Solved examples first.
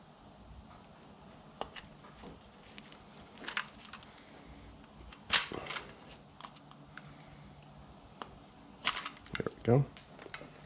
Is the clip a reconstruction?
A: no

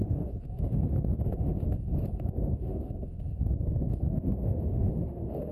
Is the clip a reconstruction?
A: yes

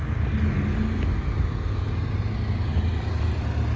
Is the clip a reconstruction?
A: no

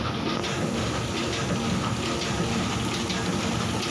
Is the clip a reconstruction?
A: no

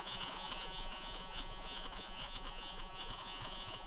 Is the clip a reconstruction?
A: yes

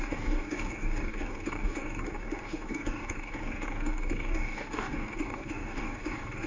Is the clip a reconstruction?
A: yes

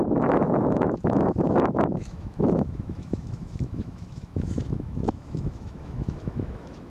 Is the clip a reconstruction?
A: yes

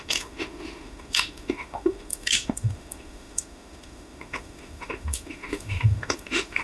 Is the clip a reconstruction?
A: yes